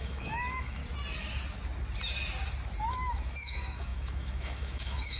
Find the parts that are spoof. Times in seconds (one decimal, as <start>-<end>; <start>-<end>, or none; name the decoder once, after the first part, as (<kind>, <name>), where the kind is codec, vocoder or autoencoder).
0.0-0.8 (autoencoder, DAC-VAE); 2.9-5.2